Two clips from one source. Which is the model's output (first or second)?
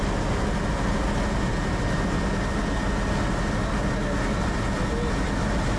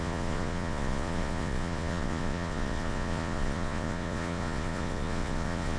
second